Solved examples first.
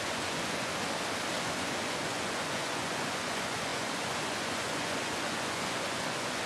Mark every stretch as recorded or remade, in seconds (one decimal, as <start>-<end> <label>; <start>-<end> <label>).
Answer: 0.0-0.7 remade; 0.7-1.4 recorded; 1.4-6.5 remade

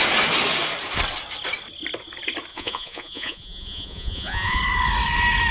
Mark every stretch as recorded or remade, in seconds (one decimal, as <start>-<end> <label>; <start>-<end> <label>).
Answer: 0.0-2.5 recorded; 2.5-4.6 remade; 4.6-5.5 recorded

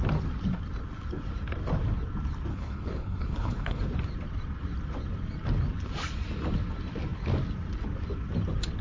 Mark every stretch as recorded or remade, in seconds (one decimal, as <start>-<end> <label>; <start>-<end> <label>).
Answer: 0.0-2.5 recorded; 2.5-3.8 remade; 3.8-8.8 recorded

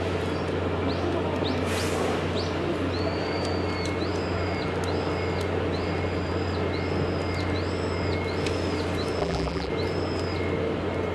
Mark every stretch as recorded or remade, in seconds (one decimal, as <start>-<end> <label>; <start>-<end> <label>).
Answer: 0.0-9.2 recorded; 9.2-9.7 remade; 9.7-11.1 recorded

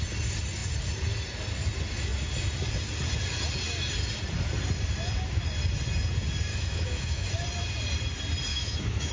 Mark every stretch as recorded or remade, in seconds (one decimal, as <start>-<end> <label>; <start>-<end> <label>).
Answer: 0.0-6.5 recorded; 6.5-7.3 remade; 7.3-8.5 recorded; 8.5-9.1 remade

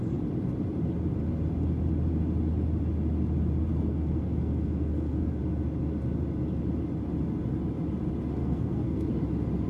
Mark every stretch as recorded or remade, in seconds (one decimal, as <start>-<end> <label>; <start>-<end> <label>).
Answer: 0.0-3.7 recorded; 3.7-5.4 remade; 5.4-8.4 recorded; 8.4-9.1 remade; 9.1-9.7 recorded

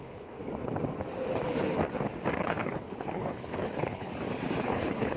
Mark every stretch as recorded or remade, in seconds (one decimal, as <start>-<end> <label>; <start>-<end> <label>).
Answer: 0.0-0.4 remade; 0.4-2.4 recorded; 2.4-4.1 remade; 4.1-4.6 recorded; 4.6-5.2 remade